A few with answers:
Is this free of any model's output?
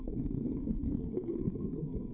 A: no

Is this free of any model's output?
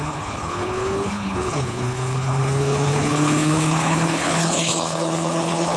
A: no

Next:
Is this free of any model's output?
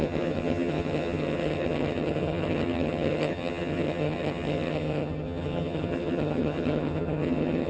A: no